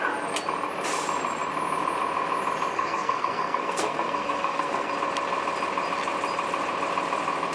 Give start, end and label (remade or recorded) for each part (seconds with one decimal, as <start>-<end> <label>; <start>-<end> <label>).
0.0-2.7 recorded; 2.7-4.9 remade; 4.9-7.5 recorded